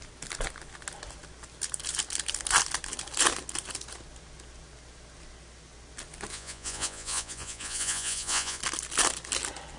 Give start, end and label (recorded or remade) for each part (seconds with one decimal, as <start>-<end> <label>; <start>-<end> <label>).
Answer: 0.0-6.3 recorded; 6.3-8.6 remade; 8.6-9.8 recorded